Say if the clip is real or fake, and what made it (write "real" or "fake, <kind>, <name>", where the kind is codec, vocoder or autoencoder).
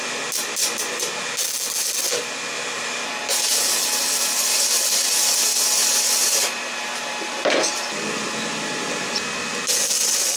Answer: real